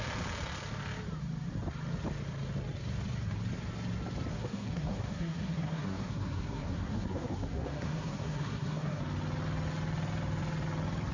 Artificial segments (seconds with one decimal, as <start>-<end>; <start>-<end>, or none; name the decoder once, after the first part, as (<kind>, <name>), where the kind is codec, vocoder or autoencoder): 4.3-9.0 (codec, SNAC)